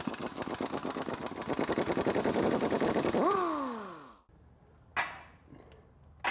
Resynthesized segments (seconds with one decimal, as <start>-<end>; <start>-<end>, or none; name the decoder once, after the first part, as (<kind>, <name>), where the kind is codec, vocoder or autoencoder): none